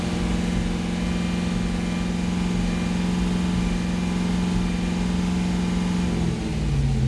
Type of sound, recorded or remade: recorded